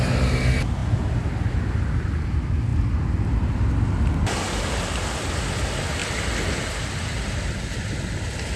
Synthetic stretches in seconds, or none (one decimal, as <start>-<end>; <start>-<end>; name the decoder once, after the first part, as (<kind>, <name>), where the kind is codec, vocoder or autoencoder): none